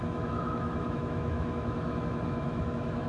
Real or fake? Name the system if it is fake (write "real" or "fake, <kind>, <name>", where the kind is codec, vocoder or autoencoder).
fake, autoencoder, DAC-VAE